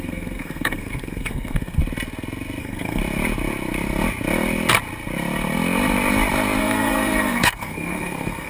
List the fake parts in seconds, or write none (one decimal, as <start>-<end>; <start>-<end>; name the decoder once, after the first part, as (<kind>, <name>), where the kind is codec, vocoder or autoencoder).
0.0-1.8 (codec, SNAC); 2.6-3.0; 6.6-8.5